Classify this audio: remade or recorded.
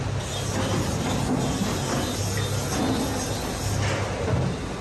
recorded